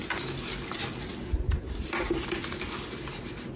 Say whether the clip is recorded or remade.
recorded